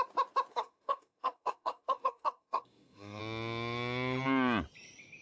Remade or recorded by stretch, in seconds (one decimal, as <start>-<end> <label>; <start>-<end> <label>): 0.0-0.5 recorded; 0.5-3.2 remade; 3.2-5.2 recorded